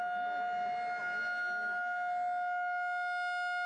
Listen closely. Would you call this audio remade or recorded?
recorded